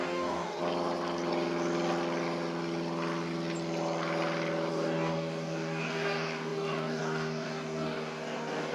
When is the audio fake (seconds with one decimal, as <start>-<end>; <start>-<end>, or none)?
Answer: 0.0-0.6; 4.7-8.7